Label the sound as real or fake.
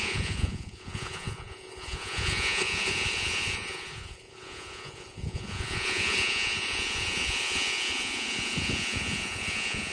fake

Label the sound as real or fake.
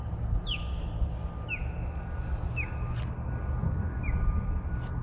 real